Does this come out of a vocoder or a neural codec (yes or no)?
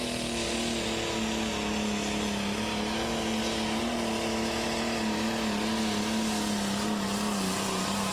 no